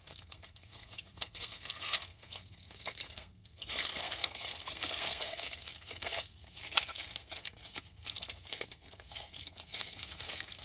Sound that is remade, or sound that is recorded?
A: remade